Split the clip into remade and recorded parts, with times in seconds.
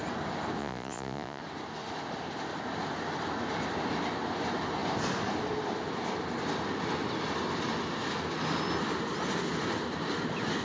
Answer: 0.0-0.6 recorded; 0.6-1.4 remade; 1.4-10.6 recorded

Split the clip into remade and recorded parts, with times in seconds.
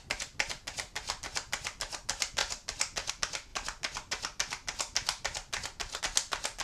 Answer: 0.0-6.6 recorded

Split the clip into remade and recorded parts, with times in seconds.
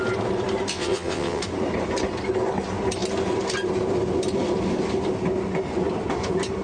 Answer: 0.0-0.7 recorded; 0.7-1.4 remade; 1.4-6.6 recorded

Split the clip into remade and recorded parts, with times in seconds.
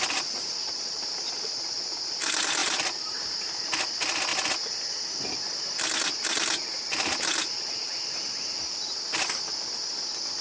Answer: 0.0-10.4 recorded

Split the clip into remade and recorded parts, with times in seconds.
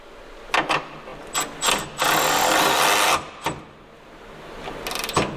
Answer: 0.0-5.4 recorded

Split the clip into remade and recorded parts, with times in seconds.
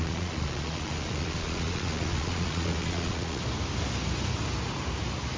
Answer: 0.0-3.4 remade; 3.4-5.4 recorded